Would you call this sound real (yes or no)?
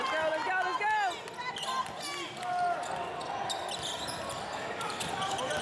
yes